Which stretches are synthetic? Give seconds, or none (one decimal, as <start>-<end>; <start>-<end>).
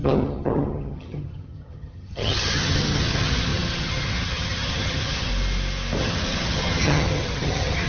0.0-5.3; 6.0-7.9